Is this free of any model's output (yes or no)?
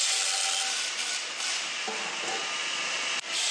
yes